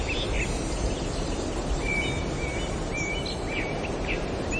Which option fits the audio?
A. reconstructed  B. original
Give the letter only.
B